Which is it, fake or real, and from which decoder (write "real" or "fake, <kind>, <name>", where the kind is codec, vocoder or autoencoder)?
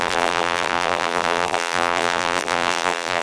fake, vocoder, BigVGAN v2